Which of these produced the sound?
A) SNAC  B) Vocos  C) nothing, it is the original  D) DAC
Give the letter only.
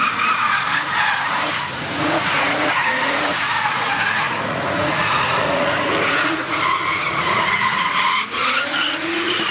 B